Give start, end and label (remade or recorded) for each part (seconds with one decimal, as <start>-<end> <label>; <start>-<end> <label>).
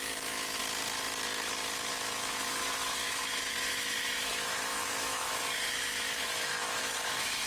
0.0-0.6 remade; 0.6-1.9 recorded; 1.9-7.5 remade